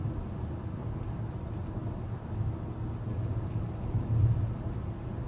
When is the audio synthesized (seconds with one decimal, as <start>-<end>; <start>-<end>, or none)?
none